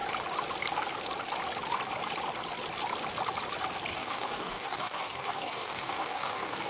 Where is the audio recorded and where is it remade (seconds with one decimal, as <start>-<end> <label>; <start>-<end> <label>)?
0.0-3.9 recorded; 3.9-6.7 remade